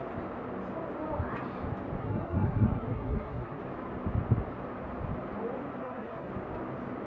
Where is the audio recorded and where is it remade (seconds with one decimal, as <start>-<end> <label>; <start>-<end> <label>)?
0.0-2.0 recorded; 2.0-3.6 remade; 3.6-5.8 recorded; 5.8-6.3 remade; 6.3-7.1 recorded

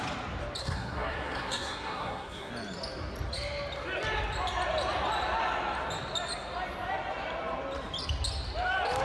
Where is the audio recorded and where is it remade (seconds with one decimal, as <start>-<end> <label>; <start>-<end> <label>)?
0.0-0.6 recorded; 0.6-2.5 remade; 2.5-9.0 recorded

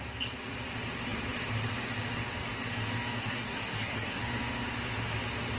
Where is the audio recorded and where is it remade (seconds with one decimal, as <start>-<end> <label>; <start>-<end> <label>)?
0.0-3.2 recorded; 3.2-4.2 remade; 4.2-5.6 recorded

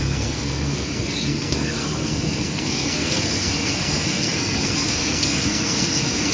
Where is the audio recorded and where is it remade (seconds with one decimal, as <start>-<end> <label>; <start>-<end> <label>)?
0.0-6.3 remade

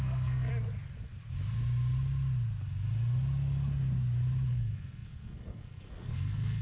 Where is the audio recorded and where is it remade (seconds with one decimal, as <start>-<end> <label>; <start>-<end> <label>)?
0.0-0.5 remade; 0.5-4.5 recorded; 4.5-6.6 remade

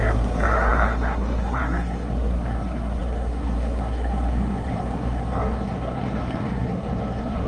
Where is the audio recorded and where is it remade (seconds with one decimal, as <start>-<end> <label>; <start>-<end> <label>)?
0.0-7.5 remade

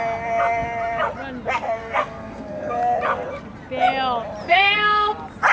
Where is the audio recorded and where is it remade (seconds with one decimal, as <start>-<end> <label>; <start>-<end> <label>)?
0.0-1.8 recorded; 1.8-2.7 remade; 2.7-4.5 recorded; 4.5-5.1 remade; 5.1-5.5 recorded

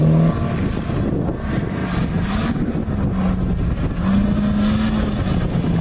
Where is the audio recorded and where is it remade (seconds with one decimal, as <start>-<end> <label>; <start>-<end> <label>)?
0.0-5.8 recorded